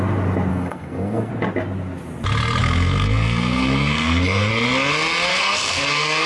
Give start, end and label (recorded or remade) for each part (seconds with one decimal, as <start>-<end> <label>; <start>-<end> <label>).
0.0-0.5 recorded; 0.5-1.3 remade; 1.3-2.6 recorded; 2.6-4.5 remade; 4.5-5.3 recorded; 5.3-6.3 remade